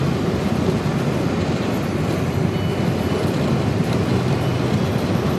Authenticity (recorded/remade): recorded